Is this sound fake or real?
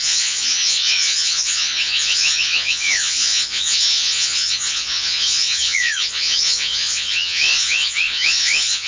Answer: fake